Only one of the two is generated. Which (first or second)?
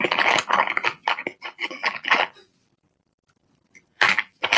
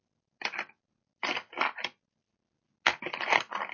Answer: first